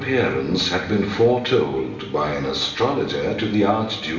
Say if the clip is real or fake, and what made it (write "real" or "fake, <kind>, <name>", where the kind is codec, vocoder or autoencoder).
real